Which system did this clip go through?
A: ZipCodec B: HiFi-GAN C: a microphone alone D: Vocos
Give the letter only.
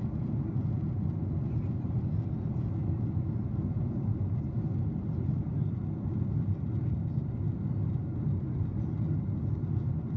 C